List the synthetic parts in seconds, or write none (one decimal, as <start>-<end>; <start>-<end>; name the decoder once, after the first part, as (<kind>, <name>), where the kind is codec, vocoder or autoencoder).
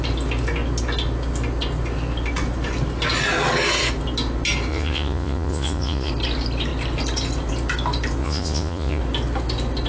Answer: 4.7-6.1 (vocoder, Vocos); 8.2-9.0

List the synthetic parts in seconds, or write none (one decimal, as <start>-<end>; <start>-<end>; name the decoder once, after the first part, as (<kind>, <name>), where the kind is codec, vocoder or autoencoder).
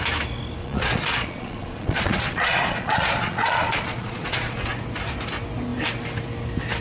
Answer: 0.6-4.7 (vocoder, Vocos)